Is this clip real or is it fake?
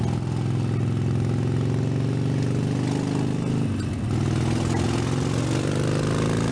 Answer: real